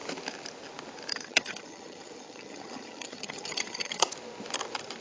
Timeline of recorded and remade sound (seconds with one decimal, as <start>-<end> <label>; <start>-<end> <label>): 0.0-1.1 recorded; 1.1-4.1 remade; 4.1-5.0 recorded

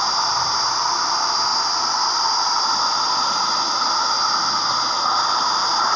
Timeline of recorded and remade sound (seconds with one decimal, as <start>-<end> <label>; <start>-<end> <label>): 0.0-6.0 recorded

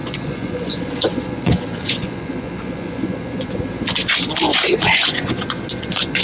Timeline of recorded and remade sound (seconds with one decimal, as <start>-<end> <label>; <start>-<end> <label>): 0.0-3.7 remade; 3.7-4.5 recorded; 4.5-6.2 remade

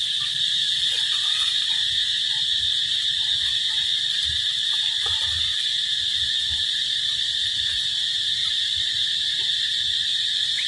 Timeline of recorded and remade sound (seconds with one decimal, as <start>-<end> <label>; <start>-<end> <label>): 0.0-10.7 remade